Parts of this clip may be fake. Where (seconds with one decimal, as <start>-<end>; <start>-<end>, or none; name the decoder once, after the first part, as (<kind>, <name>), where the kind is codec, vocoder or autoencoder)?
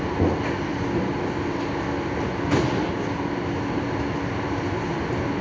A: none